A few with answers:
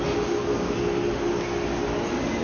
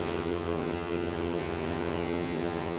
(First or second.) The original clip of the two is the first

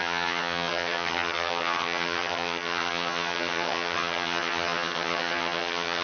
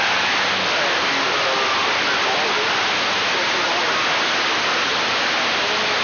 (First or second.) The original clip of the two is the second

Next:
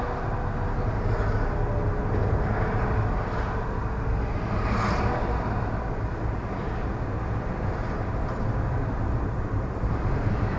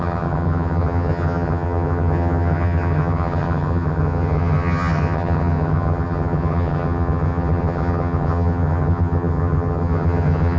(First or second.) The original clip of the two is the first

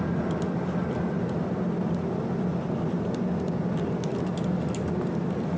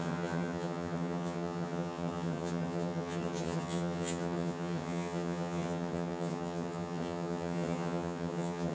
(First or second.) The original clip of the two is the first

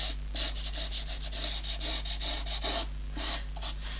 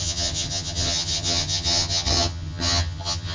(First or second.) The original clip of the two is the first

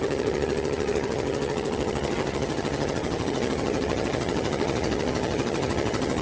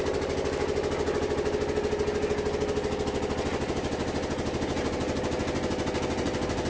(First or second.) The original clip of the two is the second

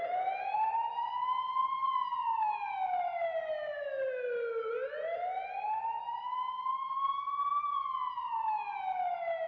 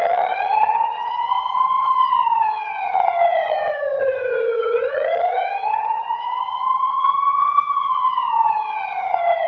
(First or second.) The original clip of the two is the first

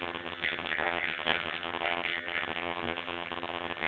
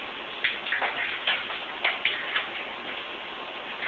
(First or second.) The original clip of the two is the second